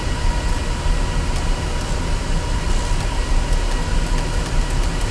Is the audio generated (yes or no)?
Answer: no